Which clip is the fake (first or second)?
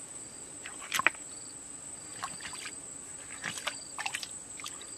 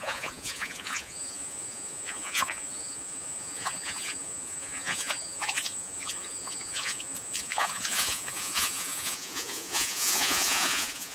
second